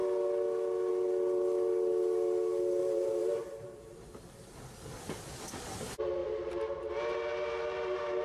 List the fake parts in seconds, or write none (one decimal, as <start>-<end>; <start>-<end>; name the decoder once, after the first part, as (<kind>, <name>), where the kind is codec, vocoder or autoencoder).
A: 2.8-4.1 (vocoder, BigVGAN v2); 6.2-6.9